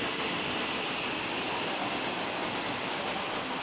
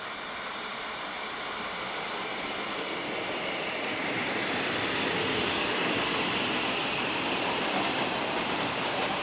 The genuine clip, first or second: first